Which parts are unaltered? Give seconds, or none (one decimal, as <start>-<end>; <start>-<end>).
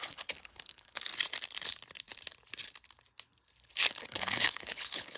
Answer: 1.1-3.7